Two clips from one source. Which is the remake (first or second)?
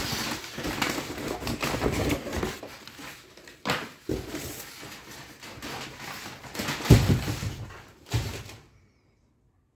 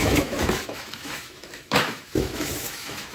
second